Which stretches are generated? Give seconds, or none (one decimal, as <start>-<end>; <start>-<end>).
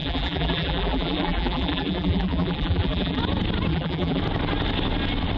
0.0-3.2; 3.7-4.2